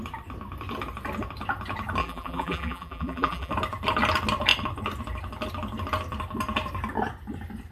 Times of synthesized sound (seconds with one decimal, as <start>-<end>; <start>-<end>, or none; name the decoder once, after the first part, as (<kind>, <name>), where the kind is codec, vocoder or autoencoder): 2.0-3.5 (vocoder, BigVGAN v2)